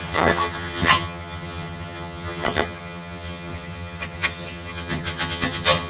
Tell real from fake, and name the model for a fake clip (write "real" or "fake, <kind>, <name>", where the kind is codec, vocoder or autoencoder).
fake, vocoder, HiFi-GAN